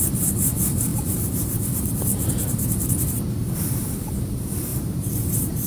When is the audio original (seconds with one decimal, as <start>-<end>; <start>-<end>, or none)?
none